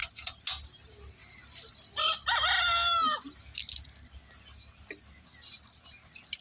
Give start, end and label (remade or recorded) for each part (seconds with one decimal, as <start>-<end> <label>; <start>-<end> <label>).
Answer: 0.0-6.4 recorded